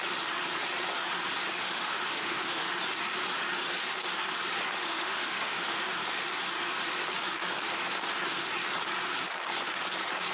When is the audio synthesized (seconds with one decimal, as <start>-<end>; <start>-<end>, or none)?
1.6-2.7; 4.8-5.8